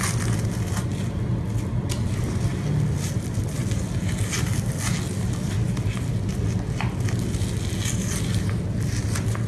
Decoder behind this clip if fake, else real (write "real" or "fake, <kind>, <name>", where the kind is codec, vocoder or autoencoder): real